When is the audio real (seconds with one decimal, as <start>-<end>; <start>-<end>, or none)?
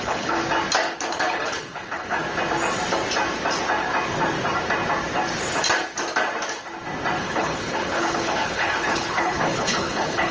0.4-1.1; 2.2-7.2